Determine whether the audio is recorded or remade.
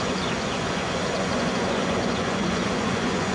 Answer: remade